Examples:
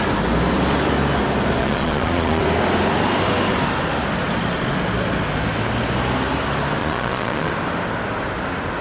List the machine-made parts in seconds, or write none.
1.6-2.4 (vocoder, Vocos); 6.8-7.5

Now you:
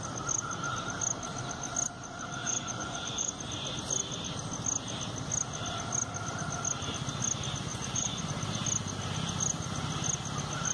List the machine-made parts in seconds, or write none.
2.4-3.4 (vocoder, Vocos); 7.7-8.2